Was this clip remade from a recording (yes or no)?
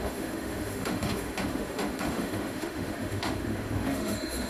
yes